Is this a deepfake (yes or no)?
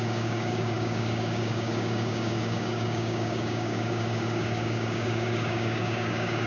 yes